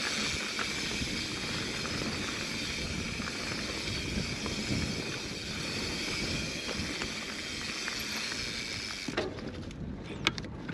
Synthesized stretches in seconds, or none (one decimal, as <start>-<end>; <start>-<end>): none